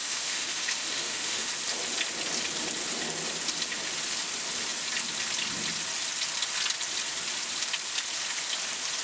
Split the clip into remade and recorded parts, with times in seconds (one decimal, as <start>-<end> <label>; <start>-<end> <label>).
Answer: 0.0-1.5 remade; 1.5-9.0 recorded